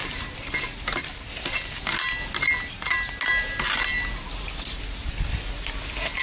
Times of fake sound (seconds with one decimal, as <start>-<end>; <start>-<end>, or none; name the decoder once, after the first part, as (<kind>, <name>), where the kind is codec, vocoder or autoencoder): none